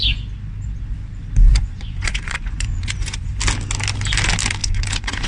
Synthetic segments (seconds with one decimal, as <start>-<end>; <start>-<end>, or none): 1.5-3.3; 4.6-5.3